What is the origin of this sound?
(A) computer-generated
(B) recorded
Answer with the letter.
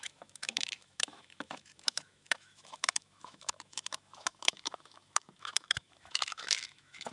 A